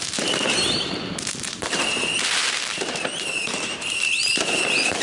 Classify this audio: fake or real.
fake